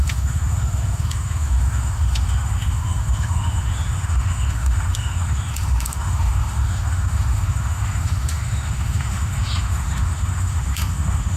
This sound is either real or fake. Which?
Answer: fake